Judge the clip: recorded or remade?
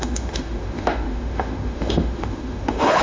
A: remade